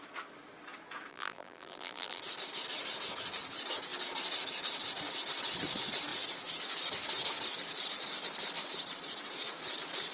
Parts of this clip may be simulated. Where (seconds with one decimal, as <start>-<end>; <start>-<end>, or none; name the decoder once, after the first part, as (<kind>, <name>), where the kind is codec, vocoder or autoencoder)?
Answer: 1.1-2.2 (vocoder, BigVGAN v2)